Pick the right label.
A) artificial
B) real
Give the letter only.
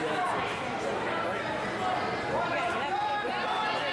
B